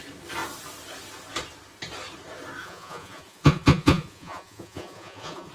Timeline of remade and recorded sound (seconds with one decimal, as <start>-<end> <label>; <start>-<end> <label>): 0.0-2.6 recorded; 2.6-5.5 remade